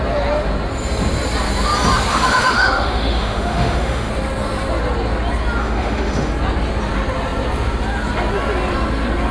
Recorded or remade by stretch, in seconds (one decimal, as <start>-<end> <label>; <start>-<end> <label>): 0.0-2.1 recorded; 2.1-4.1 remade; 4.1-5.6 recorded; 5.6-6.3 remade; 6.3-9.3 recorded